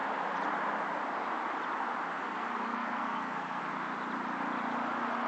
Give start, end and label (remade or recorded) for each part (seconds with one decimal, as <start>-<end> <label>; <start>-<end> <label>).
0.0-2.1 recorded; 2.1-3.6 remade; 3.6-5.3 recorded